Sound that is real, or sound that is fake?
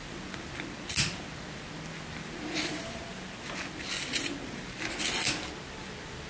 real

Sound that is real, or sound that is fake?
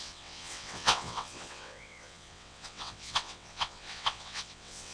fake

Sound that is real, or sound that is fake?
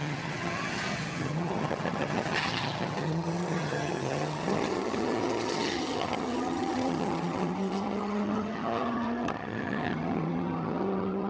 fake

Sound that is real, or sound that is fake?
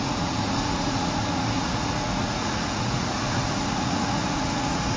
fake